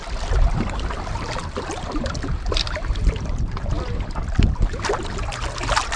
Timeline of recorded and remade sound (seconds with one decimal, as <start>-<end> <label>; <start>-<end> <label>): 0.0-6.0 remade